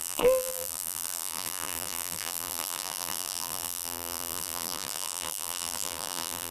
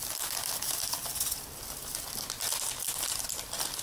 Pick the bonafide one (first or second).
second